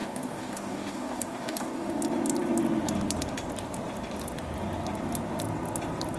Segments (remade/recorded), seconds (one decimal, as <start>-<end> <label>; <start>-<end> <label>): 0.0-2.0 remade; 2.0-6.2 recorded